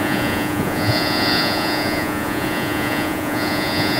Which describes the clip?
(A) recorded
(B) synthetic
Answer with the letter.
B